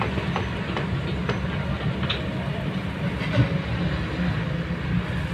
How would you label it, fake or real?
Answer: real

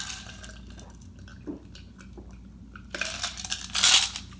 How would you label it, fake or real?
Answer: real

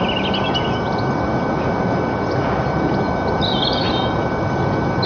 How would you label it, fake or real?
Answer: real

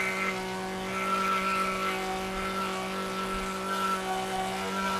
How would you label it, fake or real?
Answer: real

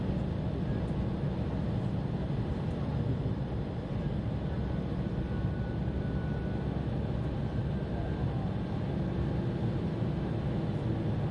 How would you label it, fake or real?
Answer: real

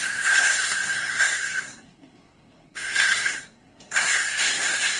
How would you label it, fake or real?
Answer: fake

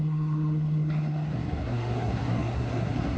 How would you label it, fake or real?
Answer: fake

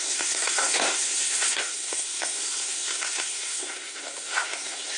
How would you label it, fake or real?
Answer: fake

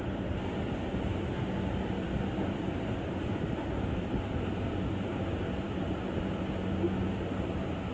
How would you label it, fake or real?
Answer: real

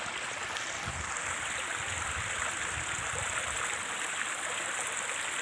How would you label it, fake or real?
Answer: real